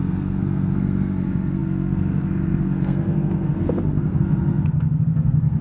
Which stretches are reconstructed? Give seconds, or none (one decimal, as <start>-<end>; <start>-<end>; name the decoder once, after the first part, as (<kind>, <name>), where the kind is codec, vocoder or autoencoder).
0.0-5.6 (codec, SNAC)